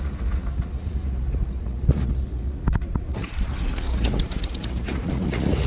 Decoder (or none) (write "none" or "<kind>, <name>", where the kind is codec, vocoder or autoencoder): vocoder, Vocos